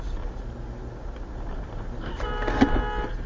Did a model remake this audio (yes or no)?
no